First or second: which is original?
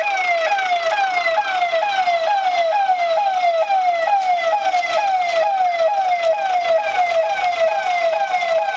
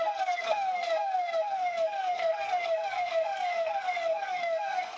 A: first